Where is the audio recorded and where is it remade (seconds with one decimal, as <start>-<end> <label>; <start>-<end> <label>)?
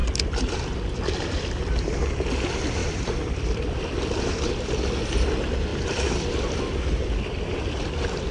0.0-1.6 remade; 1.6-2.8 recorded; 2.8-3.8 remade; 3.8-5.7 recorded; 5.7-7.4 remade; 7.4-8.3 recorded